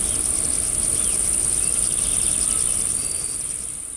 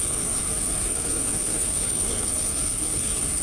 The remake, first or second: second